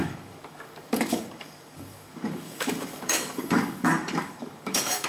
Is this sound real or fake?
fake